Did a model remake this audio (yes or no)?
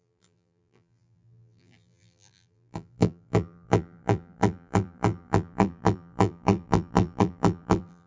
yes